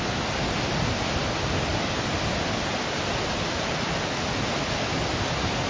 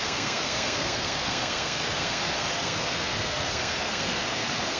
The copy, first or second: second